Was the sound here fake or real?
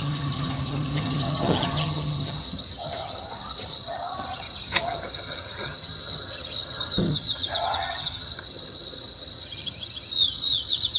fake